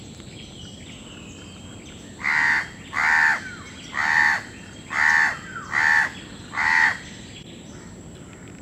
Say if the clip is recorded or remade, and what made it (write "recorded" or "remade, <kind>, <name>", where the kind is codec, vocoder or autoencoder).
recorded